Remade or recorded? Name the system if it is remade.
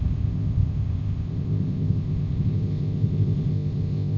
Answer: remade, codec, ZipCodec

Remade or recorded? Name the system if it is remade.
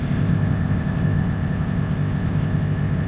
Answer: remade, codec, ZipCodec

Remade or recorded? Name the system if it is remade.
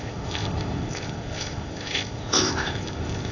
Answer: remade, codec, ZipCodec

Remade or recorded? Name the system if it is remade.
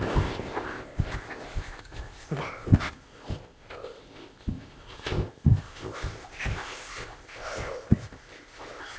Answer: remade, codec, ZipCodec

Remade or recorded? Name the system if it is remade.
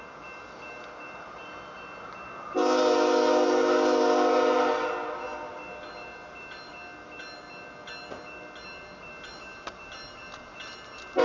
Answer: recorded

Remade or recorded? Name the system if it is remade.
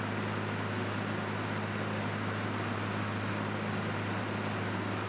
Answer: recorded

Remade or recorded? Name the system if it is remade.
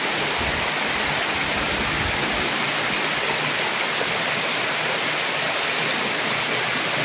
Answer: recorded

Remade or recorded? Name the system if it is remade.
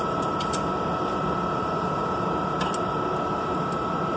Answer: recorded